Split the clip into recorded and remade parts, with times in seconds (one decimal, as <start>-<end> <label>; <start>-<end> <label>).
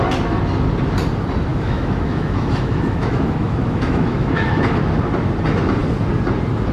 0.0-1.5 recorded; 1.5-4.8 remade; 4.8-6.7 recorded